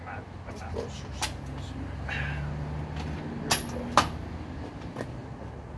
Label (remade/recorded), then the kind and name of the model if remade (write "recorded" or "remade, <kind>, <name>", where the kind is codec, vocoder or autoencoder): recorded